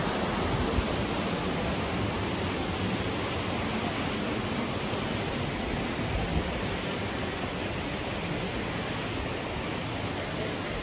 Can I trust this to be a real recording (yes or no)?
yes